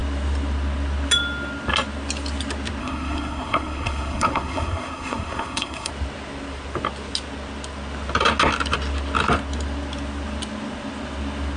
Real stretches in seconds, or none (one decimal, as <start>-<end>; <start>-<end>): 0.0-2.8; 5.9-11.6

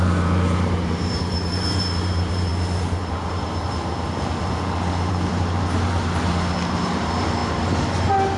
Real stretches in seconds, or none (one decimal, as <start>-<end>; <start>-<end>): 2.5-3.1; 3.9-5.1; 7.4-7.9

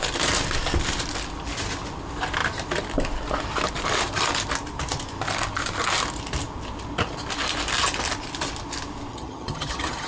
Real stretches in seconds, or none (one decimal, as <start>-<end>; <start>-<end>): 0.0-9.1

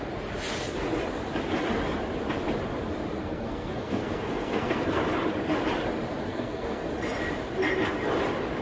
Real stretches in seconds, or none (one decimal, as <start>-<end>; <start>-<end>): 0.0-3.2; 5.0-6.3; 6.9-8.6